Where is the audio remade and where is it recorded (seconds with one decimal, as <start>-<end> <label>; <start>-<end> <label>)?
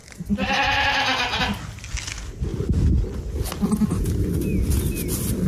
0.0-5.5 recorded